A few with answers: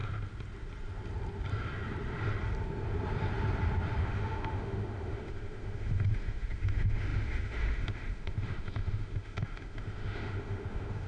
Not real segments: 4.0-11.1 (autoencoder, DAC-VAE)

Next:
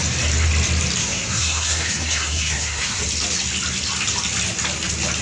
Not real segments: 1.0-3.0 (codec, SNAC)

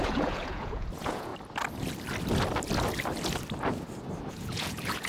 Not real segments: 0.0-1.3 (vocoder, Vocos); 4.3-5.1